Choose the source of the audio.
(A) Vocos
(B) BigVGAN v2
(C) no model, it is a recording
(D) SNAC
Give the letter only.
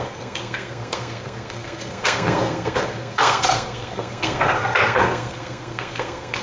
D